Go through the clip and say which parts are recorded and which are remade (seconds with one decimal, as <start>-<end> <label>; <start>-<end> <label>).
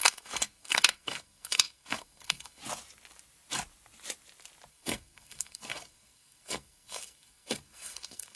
0.0-2.6 remade; 2.6-4.7 recorded; 4.7-8.4 remade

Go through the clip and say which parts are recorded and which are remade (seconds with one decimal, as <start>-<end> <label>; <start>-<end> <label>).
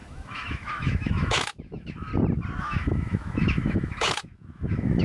0.0-2.1 remade; 2.1-2.6 recorded; 2.6-5.0 remade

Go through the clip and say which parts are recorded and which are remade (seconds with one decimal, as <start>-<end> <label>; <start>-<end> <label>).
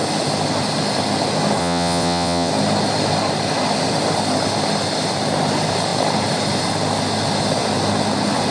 0.0-1.6 recorded; 1.6-2.5 remade; 2.5-8.5 recorded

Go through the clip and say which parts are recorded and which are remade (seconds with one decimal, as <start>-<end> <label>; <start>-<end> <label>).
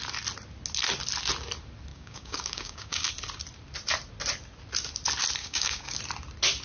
0.0-1.9 recorded; 1.9-3.1 remade; 3.1-5.4 recorded; 5.4-6.0 remade; 6.0-6.6 recorded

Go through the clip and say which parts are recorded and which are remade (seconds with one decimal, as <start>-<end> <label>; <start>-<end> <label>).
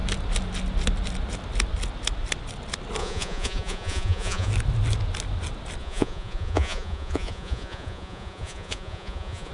0.0-3.0 recorded; 3.0-4.5 remade; 4.5-5.8 recorded; 5.8-9.5 remade